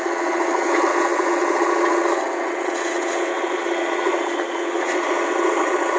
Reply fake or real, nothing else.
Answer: fake